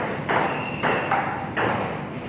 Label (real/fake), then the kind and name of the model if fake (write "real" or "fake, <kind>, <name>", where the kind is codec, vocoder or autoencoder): real